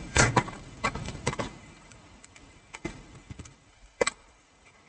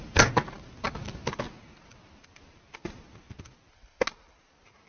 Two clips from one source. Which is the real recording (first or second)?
second